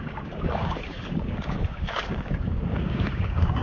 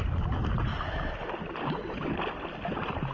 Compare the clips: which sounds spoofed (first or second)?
first